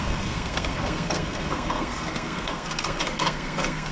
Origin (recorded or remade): remade